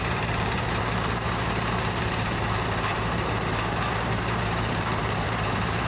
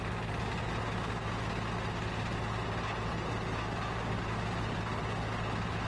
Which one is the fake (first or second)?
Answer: first